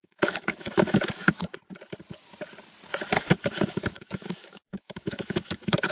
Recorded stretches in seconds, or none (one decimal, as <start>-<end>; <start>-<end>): 1.5-3.2